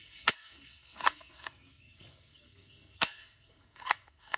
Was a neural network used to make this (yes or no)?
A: yes